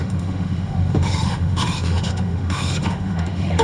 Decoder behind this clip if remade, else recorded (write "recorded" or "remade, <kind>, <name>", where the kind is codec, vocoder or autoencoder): remade, autoencoder, DAC-VAE